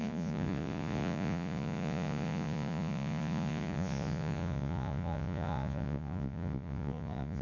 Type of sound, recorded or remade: remade